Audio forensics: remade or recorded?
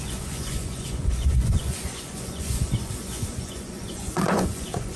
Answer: remade